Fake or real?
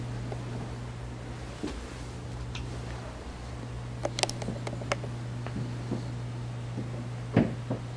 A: real